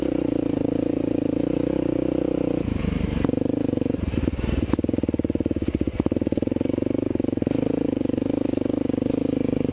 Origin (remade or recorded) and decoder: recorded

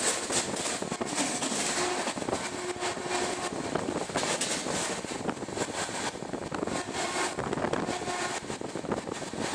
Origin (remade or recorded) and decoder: recorded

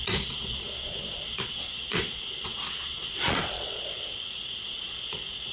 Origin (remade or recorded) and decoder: remade, vocoder, Vocos